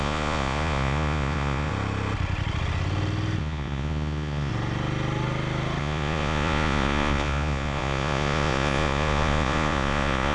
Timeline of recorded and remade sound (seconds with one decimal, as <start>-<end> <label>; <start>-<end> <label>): 0.0-1.7 remade; 1.7-3.4 recorded; 3.4-4.5 remade; 4.5-5.8 recorded; 5.8-10.3 remade